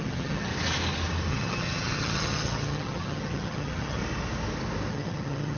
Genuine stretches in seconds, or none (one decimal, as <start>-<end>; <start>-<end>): 0.5-1.3; 4.0-4.9